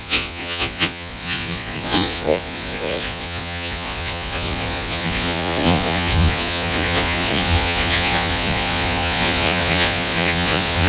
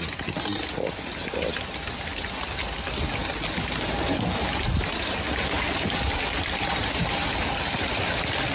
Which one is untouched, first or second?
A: second